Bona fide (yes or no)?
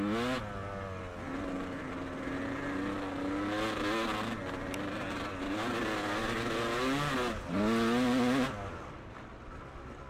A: yes